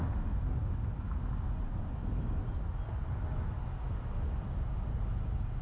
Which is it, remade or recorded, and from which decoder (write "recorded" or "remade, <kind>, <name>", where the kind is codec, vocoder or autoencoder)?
recorded